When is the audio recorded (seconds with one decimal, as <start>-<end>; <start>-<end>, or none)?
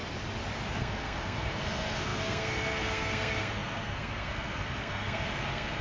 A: 0.0-0.8